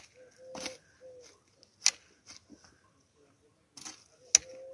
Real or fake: real